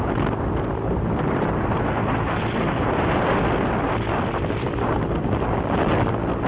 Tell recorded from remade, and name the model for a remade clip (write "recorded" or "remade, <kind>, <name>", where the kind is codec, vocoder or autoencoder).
recorded